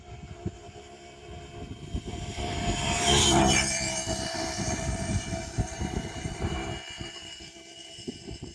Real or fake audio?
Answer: fake